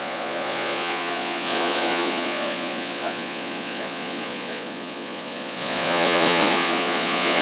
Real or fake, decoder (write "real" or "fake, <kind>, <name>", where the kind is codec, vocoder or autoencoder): fake, vocoder, Vocos